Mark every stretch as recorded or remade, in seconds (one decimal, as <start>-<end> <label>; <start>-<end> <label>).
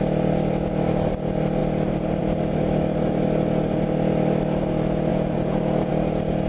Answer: 0.0-5.1 recorded; 5.1-5.9 remade; 5.9-6.5 recorded